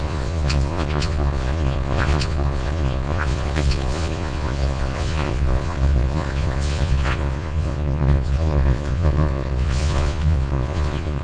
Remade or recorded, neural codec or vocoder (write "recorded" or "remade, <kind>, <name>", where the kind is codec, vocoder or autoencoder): remade, vocoder, Vocos